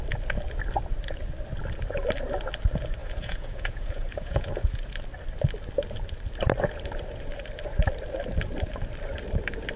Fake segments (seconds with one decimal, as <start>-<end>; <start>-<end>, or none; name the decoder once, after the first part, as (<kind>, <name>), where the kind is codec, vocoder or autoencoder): 3.0-4.9 (vocoder, Vocos)